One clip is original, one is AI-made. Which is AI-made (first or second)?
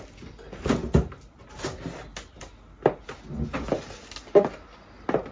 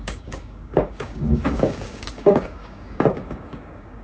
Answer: second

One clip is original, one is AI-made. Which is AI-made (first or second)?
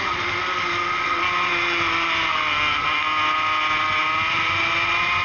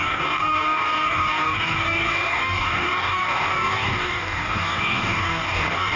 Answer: second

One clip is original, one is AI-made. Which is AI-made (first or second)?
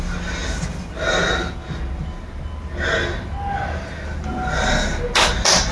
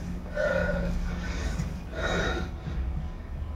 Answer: second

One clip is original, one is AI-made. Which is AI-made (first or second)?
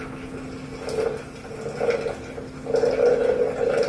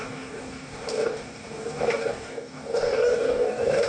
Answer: second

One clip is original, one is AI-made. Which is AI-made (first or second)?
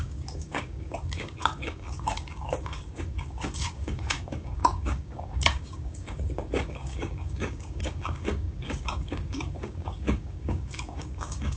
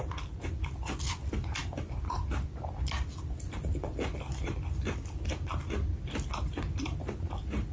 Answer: first